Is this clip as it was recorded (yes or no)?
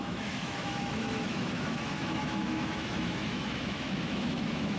no